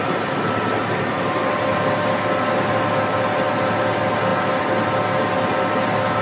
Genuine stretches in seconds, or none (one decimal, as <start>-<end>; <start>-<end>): 0.0-6.2